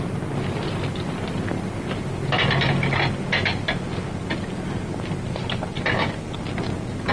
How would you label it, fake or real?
real